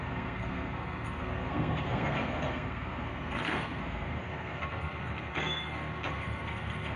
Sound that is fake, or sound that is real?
fake